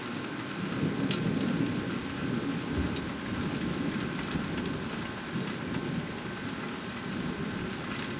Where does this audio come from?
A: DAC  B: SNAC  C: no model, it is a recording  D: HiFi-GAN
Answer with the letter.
C